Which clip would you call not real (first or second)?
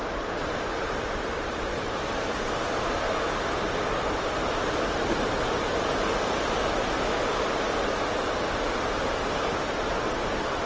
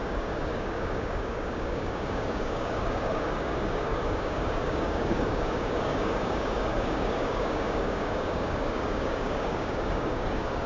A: second